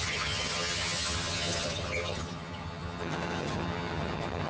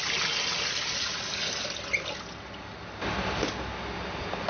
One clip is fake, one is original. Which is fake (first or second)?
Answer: first